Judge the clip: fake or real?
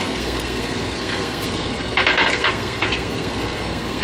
fake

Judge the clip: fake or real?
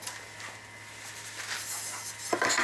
real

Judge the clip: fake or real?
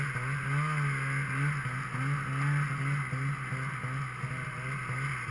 real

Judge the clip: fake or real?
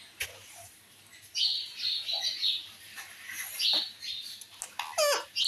real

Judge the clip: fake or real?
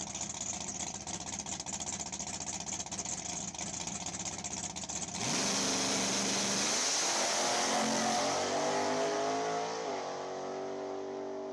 real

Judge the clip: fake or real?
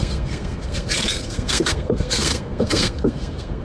fake